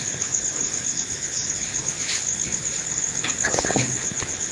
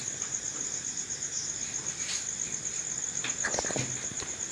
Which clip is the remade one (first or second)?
first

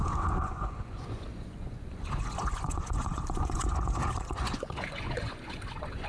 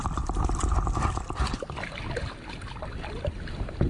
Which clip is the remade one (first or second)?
first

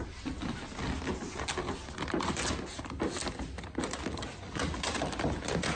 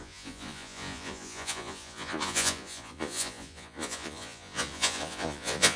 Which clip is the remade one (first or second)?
second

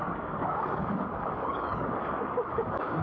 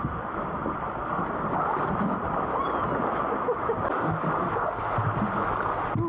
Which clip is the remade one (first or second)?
first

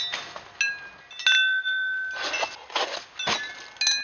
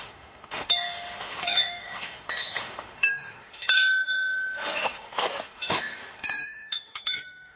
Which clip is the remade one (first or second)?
second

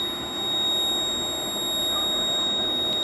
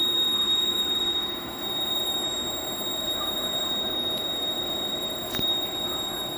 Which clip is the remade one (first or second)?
second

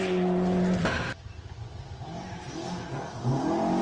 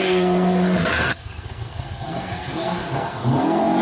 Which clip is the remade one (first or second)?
second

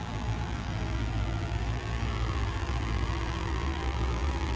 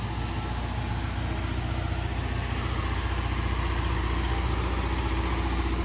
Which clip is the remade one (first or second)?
first